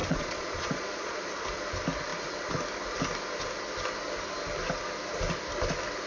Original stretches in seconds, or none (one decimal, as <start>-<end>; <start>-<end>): 1.2-6.1